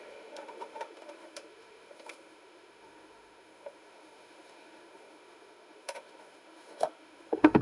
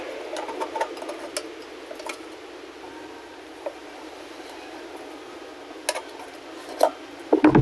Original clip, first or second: second